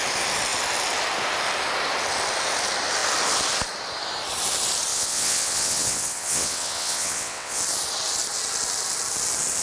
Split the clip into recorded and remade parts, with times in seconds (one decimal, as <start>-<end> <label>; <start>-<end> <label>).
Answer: 0.0-4.9 recorded; 4.9-7.6 remade; 7.6-9.6 recorded